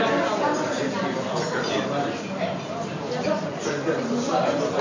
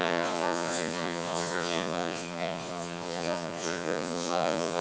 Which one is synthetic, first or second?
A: second